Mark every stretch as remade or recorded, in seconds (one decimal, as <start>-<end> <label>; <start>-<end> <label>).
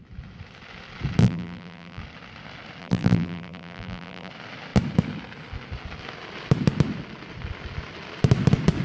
0.0-1.2 recorded; 1.2-2.0 remade; 2.0-2.8 recorded; 2.8-4.3 remade; 4.3-8.8 recorded